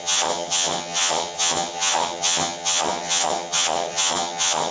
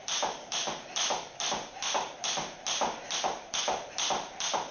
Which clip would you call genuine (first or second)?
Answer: second